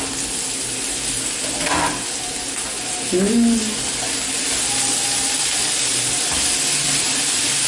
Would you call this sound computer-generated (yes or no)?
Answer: no